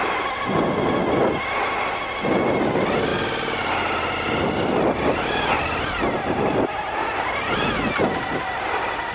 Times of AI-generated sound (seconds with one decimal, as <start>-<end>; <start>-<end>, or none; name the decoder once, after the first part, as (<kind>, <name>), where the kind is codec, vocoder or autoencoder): none